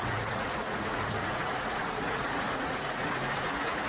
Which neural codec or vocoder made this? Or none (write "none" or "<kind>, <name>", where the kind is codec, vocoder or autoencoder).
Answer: vocoder, Vocos